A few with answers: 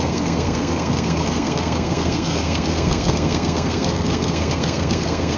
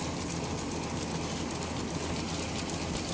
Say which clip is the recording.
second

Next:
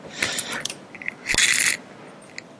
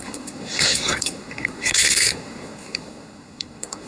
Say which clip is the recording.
first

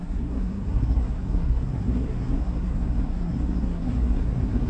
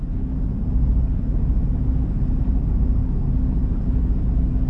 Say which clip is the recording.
second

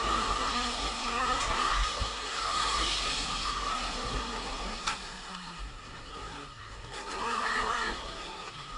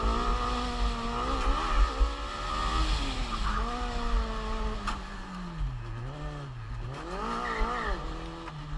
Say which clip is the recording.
second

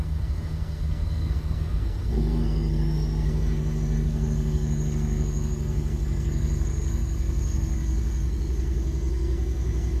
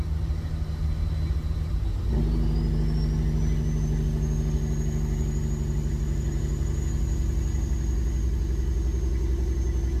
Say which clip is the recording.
second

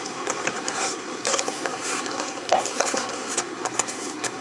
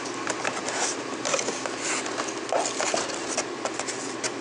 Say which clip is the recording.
second